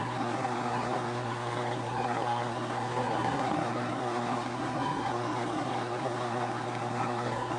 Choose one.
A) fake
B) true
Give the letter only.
A